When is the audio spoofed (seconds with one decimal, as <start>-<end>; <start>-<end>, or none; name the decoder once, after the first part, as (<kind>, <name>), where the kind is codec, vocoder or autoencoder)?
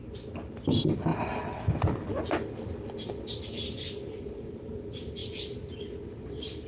none